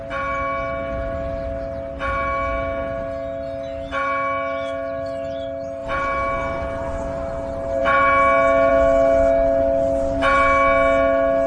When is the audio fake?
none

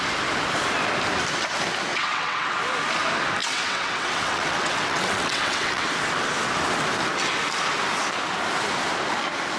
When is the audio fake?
1.9-2.6 (vocoder, WaveNeXt); 3.4-5.9

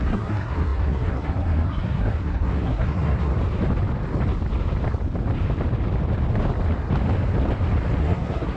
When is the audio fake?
0.0-3.3 (codec, SNAC); 8.0-8.6

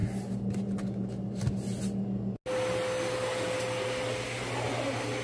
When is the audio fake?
none